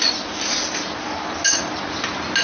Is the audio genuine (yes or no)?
yes